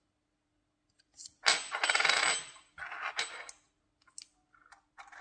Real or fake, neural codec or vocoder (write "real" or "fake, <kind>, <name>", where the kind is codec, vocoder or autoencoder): real